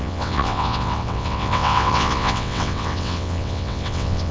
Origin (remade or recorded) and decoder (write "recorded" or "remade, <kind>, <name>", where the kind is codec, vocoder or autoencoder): remade, vocoder, WaveNeXt